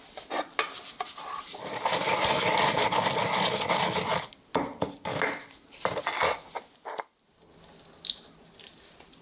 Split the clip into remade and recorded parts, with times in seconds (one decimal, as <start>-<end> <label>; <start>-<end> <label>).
0.0-9.2 recorded